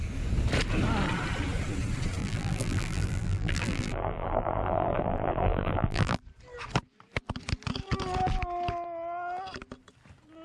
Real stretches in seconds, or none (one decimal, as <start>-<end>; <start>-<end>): 0.0-2.2; 6.2-10.4